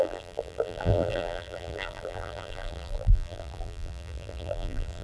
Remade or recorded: remade